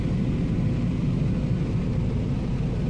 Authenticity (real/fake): real